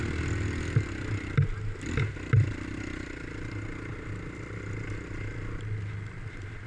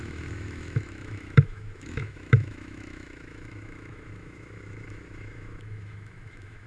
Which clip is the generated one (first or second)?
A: second